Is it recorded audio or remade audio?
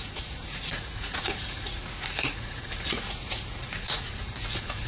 remade